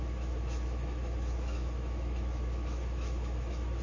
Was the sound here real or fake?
fake